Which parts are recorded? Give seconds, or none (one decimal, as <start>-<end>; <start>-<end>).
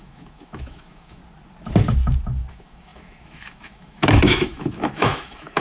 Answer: 1.2-2.5